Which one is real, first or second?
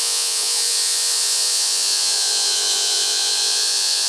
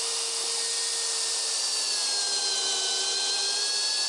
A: second